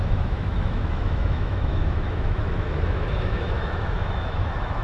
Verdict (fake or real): fake